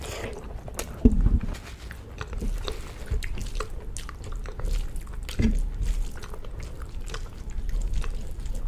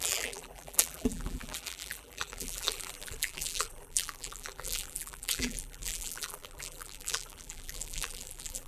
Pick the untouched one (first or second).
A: first